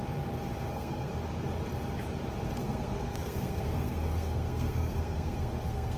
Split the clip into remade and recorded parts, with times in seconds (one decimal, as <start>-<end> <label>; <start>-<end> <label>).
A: 0.0-0.7 recorded; 0.7-1.1 remade; 1.1-2.6 recorded; 2.6-6.0 remade